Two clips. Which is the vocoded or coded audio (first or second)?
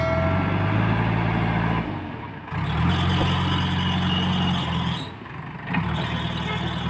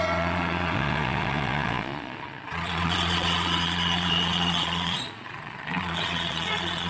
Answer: second